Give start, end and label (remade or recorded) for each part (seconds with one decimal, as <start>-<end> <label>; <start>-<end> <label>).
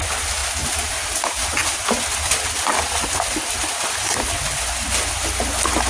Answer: 0.0-5.9 recorded